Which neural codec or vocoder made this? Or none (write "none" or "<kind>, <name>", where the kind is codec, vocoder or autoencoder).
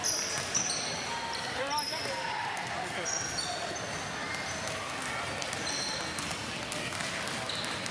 none